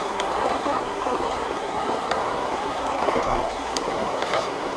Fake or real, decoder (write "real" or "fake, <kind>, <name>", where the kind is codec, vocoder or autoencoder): fake, codec, SNAC